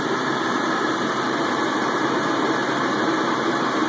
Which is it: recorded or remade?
remade